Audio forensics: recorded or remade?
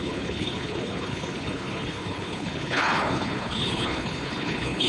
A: remade